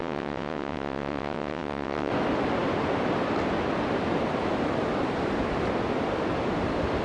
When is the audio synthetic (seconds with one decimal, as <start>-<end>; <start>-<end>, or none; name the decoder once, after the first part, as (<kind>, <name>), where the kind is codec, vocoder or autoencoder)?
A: 0.0-2.1 (vocoder, WaveNeXt)